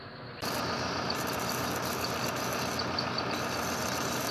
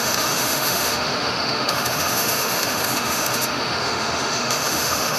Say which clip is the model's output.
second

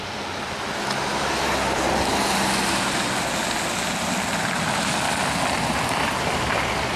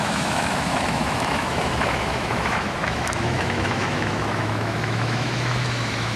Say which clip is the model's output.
second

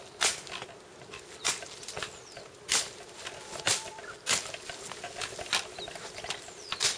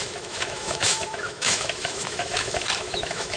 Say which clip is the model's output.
second